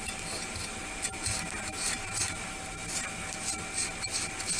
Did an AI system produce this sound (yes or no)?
no